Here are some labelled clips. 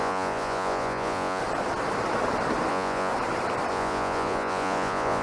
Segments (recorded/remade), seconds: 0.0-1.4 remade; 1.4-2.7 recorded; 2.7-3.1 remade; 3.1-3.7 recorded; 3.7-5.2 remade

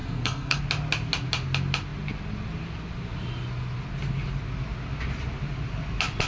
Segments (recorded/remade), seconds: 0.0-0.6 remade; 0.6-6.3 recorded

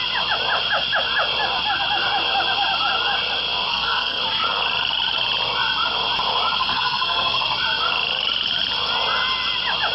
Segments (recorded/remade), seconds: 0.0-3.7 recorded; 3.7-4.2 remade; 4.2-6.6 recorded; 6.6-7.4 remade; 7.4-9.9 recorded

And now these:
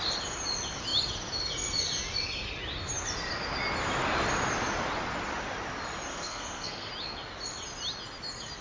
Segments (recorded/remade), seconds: 0.0-6.1 recorded; 6.1-6.9 remade; 6.9-8.6 recorded

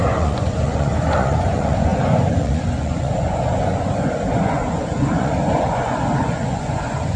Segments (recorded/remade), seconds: 0.0-7.2 remade